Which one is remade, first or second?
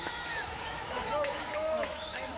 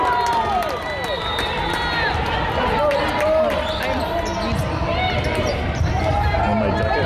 first